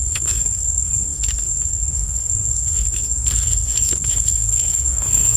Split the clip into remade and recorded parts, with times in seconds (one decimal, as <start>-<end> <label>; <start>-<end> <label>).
0.0-5.4 remade